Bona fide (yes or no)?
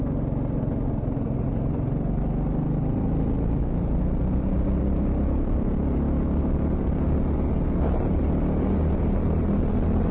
yes